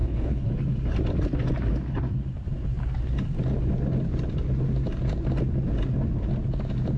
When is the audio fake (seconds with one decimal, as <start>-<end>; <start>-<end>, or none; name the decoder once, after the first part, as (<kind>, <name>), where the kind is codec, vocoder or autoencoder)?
0.0-0.5 (codec, HILCodec)